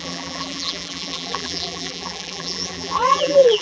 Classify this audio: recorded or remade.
remade